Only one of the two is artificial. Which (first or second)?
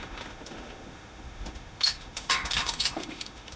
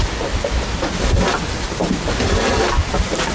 first